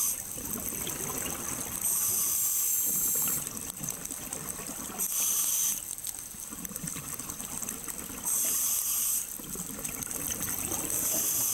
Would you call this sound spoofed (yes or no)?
no